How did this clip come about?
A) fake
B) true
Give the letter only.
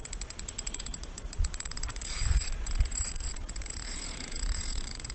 A